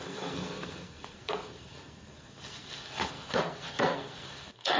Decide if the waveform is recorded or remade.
remade